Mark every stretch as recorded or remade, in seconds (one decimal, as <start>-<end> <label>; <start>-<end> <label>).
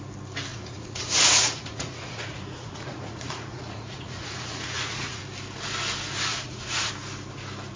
0.0-0.5 recorded; 0.5-5.2 remade; 5.2-6.3 recorded; 6.3-6.9 remade; 6.9-7.8 recorded